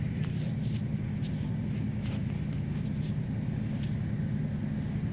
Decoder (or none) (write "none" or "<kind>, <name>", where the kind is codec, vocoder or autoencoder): none